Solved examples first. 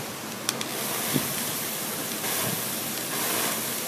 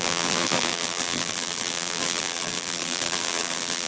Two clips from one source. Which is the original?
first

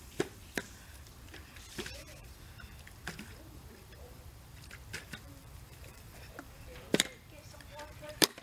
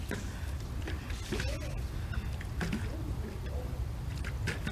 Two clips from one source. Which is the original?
second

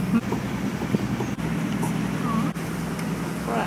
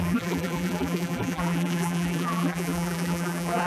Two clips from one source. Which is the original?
first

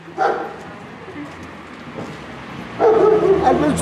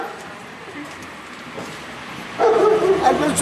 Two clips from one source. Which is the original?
first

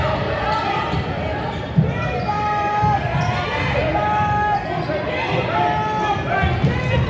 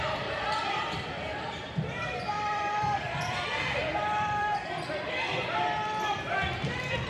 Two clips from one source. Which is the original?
first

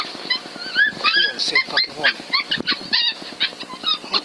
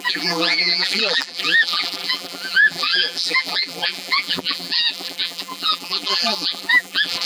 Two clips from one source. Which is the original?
first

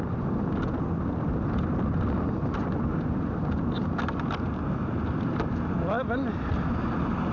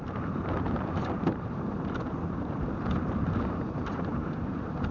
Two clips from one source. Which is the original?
first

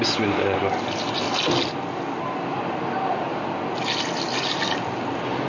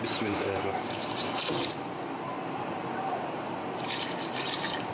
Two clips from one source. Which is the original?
first